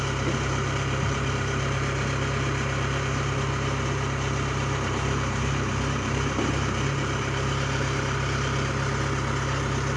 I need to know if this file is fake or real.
fake